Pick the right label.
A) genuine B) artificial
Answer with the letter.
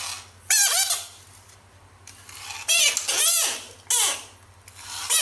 A